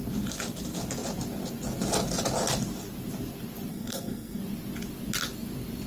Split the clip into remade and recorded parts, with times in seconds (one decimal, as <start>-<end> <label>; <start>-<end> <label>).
0.0-3.7 recorded; 3.7-4.4 remade; 4.4-5.9 recorded